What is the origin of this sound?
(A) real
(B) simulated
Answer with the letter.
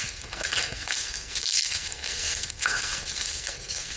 B